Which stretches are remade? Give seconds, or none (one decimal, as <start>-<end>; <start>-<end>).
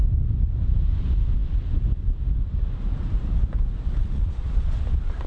4.0-4.7